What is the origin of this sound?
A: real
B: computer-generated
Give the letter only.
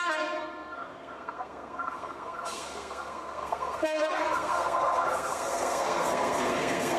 B